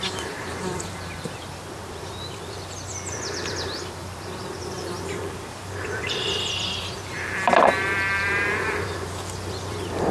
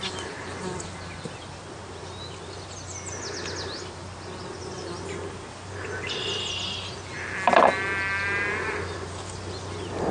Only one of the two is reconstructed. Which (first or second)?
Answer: first